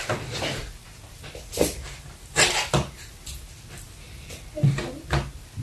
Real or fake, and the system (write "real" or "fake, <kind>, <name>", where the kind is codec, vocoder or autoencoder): real